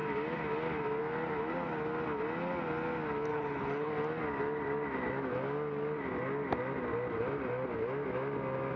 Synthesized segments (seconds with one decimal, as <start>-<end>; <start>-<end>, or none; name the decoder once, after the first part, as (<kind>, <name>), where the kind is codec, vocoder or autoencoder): 3.3-3.9 (codec, HILCodec)